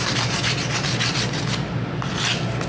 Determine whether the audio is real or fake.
real